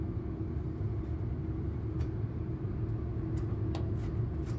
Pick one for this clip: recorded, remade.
recorded